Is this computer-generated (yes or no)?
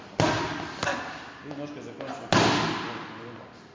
no